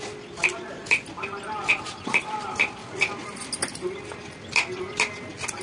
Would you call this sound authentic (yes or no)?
yes